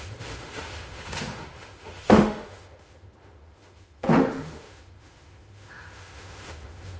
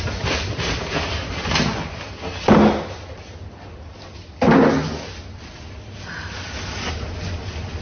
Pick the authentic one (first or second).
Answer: second